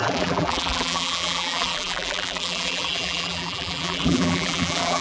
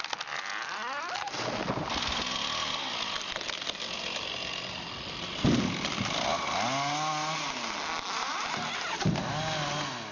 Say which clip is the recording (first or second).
second